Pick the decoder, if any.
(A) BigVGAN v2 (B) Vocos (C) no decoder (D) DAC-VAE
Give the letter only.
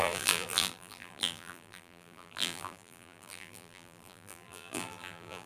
A